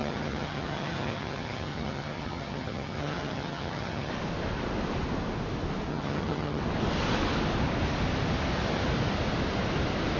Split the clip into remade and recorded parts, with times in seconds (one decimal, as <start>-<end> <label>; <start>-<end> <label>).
0.0-4.1 remade; 4.1-5.9 recorded; 5.9-6.6 remade; 6.6-10.2 recorded